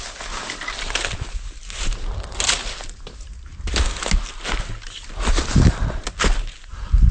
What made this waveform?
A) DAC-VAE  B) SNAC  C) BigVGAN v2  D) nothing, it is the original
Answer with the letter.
D